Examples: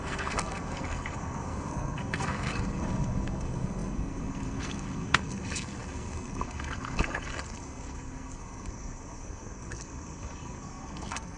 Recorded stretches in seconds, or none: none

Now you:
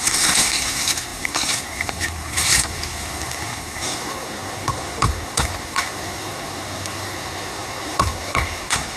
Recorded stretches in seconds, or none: none

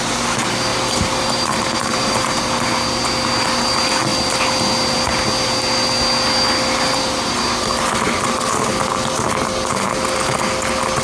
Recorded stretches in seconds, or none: 0.0-0.7; 2.4-11.0

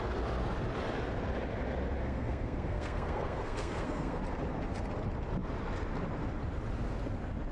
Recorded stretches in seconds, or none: 0.0-2.0; 4.2-7.5